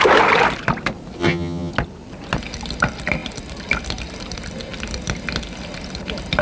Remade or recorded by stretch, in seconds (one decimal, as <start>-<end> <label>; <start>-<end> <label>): 0.0-1.2 recorded; 1.2-1.7 remade; 1.7-6.4 recorded